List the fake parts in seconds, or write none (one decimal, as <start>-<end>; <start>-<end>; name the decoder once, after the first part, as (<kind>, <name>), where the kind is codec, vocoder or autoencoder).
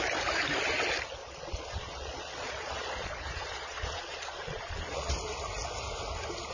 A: 1.2-5.1 (vocoder, Vocos)